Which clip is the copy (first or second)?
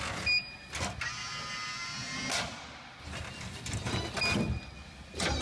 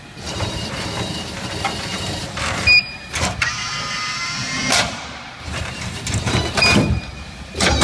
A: second